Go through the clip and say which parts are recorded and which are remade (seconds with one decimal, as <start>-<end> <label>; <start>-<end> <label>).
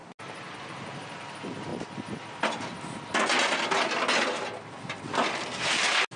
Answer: 0.0-6.2 recorded